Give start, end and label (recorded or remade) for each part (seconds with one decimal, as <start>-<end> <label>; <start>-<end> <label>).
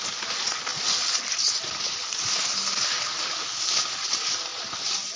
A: 0.0-5.2 recorded